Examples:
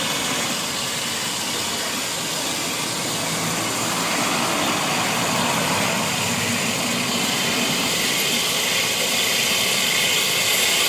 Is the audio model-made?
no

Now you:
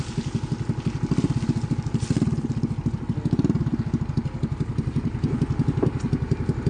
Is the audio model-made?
no